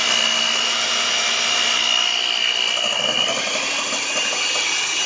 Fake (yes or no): no